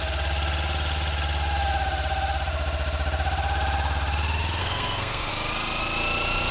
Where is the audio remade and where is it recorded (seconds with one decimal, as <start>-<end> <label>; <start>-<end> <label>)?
0.0-4.6 recorded; 4.6-5.3 remade; 5.3-6.5 recorded